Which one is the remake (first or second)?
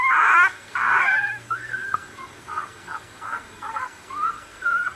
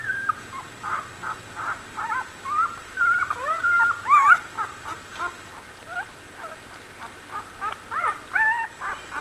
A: first